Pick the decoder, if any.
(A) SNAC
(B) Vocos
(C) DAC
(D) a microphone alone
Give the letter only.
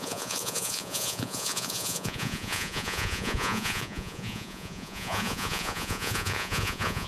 B